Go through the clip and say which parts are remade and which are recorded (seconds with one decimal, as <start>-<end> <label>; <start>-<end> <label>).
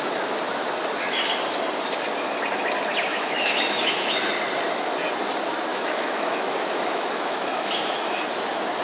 0.0-3.1 recorded; 3.1-4.2 remade; 4.2-5.7 recorded; 5.7-8.3 remade; 8.3-8.8 recorded